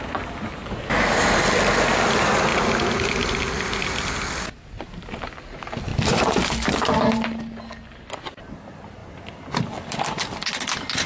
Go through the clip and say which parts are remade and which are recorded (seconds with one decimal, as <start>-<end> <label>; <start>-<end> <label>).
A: 0.0-5.9 recorded; 5.9-6.7 remade; 6.7-11.1 recorded